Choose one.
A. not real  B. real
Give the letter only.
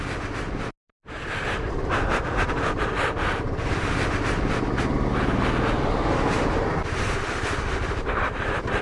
B